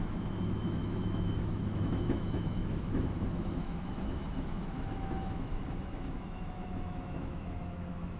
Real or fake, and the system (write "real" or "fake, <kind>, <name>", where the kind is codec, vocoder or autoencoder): fake, autoencoder, DAC-VAE